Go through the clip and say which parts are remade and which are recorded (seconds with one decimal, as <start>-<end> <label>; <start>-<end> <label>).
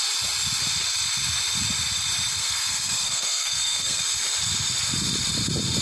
0.0-2.3 recorded; 2.3-4.0 remade; 4.0-5.8 recorded